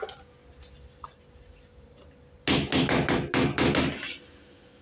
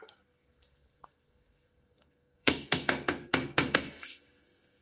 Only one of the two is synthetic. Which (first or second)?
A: second